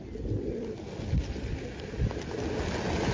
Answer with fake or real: real